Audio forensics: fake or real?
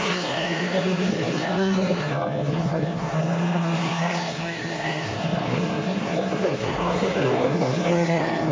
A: fake